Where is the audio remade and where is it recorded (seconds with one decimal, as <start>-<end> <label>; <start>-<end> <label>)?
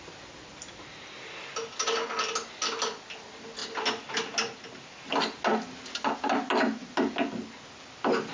0.0-8.3 recorded